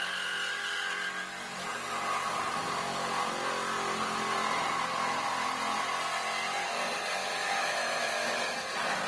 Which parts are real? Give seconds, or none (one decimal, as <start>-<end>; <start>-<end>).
0.0-7.2; 8.5-9.1